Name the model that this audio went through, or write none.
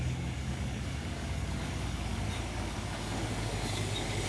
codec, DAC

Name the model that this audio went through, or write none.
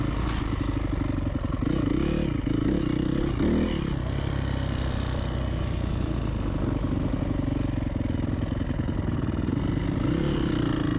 none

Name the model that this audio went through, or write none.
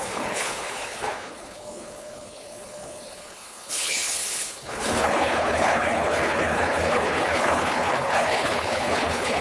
codec, HILCodec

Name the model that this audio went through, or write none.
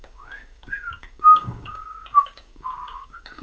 codec, DAC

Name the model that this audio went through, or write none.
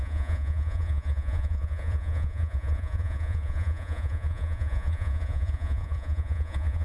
vocoder, Vocos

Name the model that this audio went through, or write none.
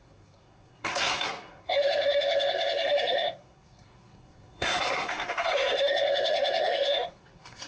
codec, SNAC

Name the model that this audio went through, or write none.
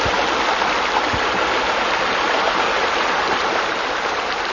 none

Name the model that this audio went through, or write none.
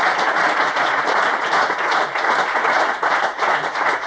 vocoder, Vocos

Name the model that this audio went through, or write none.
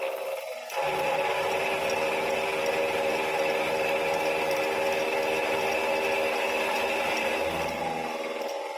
none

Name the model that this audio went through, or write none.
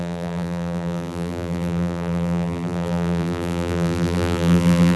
vocoder, BigVGAN v2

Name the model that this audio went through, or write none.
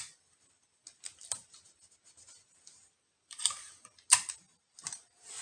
none